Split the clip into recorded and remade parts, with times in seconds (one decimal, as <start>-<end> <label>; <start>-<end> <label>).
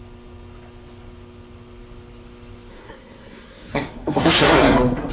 0.0-2.7 recorded; 2.7-5.1 remade